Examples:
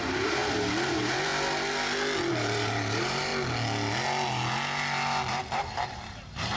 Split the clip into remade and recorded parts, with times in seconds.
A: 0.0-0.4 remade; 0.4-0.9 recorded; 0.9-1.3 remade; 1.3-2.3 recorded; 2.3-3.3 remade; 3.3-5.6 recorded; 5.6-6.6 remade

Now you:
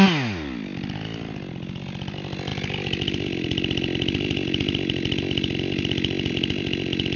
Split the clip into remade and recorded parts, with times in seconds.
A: 0.0-0.7 recorded; 0.7-1.5 remade; 1.5-2.5 recorded; 2.5-6.3 remade; 6.3-7.2 recorded

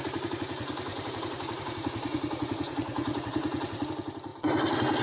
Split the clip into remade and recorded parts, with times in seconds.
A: 0.0-0.9 recorded; 0.9-3.9 remade; 3.9-5.0 recorded

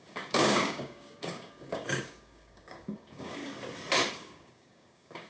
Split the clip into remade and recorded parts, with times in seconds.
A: 0.0-3.4 remade; 3.4-4.1 recorded; 4.1-5.3 remade

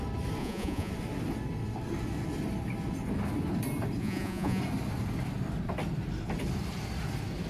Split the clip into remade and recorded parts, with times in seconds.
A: 0.0-0.4 recorded; 0.4-0.9 remade; 0.9-4.0 recorded; 4.0-4.6 remade; 4.6-7.5 recorded

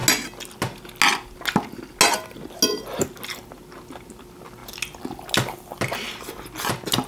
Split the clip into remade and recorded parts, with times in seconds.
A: 0.0-7.1 recorded